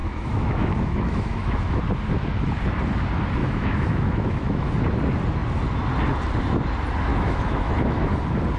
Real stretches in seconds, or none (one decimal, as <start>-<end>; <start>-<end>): 1.8-3.4; 4.7-7.1; 8.1-8.6